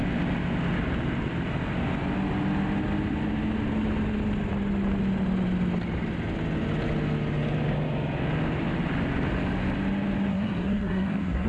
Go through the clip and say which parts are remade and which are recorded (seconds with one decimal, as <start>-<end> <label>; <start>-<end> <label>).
0.0-10.3 recorded; 10.3-11.5 remade